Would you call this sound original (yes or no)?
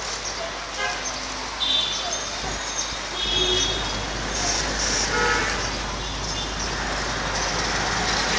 yes